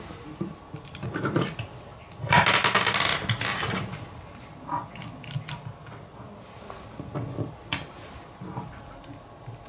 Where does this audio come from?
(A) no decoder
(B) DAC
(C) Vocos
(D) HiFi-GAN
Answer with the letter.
A